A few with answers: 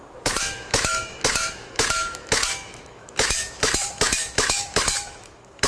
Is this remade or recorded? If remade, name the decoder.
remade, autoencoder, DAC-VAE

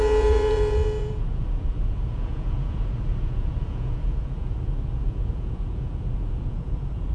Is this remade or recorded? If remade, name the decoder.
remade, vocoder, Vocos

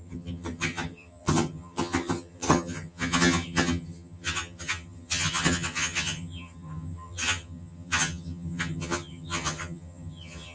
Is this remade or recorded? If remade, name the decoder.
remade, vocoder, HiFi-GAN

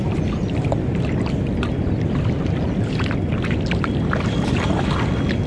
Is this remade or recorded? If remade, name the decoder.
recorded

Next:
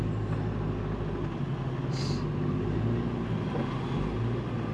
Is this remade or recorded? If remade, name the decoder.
recorded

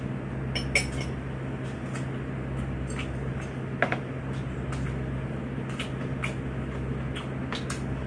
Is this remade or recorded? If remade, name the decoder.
recorded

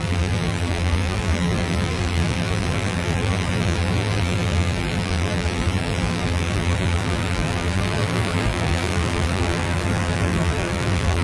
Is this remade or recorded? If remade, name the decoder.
remade, vocoder, BigVGAN v2